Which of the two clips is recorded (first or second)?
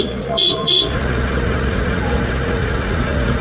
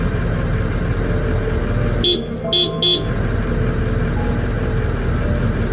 second